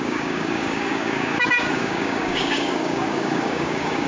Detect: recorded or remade remade